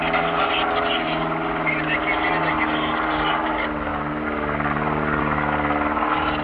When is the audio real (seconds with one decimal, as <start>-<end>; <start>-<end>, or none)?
0.0-6.4